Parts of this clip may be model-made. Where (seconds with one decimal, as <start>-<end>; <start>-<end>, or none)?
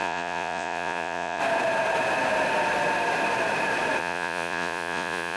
0.0-1.4; 4.0-5.4